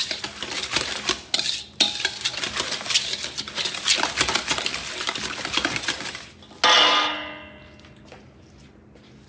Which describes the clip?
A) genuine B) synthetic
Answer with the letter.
A